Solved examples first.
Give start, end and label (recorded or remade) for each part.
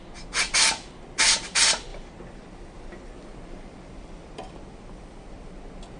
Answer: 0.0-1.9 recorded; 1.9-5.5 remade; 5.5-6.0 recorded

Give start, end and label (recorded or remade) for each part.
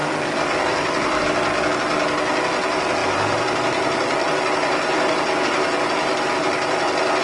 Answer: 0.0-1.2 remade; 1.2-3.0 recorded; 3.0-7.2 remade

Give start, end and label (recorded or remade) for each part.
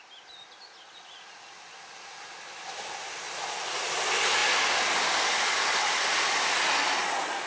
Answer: 0.0-7.5 recorded